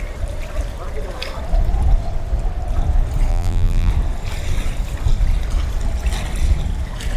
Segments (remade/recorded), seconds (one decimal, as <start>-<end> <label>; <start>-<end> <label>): 0.0-3.3 recorded; 3.3-3.9 remade; 3.9-7.2 recorded